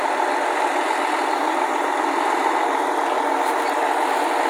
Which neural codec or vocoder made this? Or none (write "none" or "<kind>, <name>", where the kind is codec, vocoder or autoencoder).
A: none